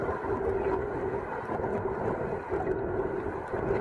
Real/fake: real